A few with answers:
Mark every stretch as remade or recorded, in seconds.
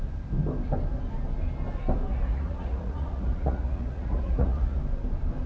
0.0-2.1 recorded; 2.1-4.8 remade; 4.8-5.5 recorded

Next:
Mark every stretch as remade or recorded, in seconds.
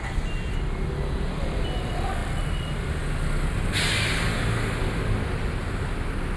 0.0-6.4 recorded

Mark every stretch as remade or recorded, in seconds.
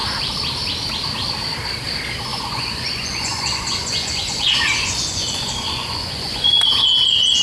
0.0-2.3 recorded; 2.3-6.7 remade; 6.7-7.4 recorded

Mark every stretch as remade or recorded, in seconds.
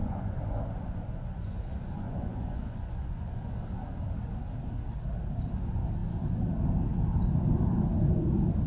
0.0-3.5 remade; 3.5-8.7 recorded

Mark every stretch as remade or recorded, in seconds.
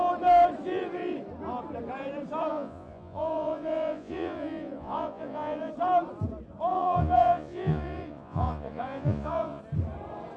0.0-2.5 recorded; 2.5-5.7 remade; 5.7-6.7 recorded; 6.7-9.6 remade; 9.6-10.4 recorded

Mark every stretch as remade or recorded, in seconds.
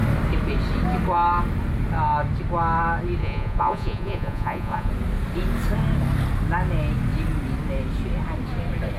0.0-3.2 recorded; 3.2-4.9 remade; 4.9-9.0 recorded